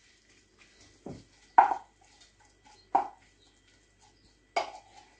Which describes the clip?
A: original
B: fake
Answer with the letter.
A